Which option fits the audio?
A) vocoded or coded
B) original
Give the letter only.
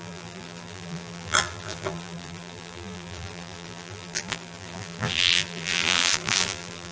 A